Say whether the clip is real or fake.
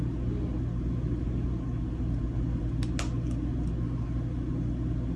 real